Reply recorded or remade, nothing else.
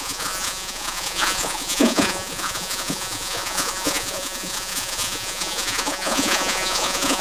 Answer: remade